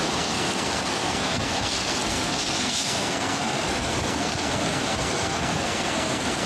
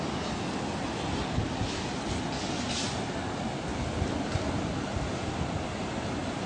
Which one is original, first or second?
second